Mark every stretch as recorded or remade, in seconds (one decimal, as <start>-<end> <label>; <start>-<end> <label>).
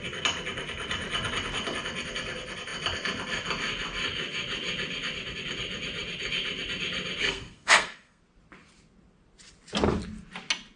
0.0-7.2 recorded; 7.2-8.2 remade; 8.2-10.8 recorded